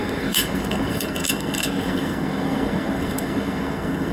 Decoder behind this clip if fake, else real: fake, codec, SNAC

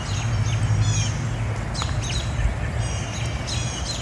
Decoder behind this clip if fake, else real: real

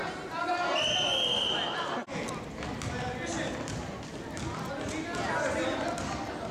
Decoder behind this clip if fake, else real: real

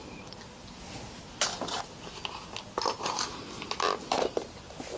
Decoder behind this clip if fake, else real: real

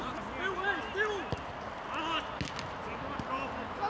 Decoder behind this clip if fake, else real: real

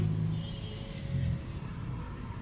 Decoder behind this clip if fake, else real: real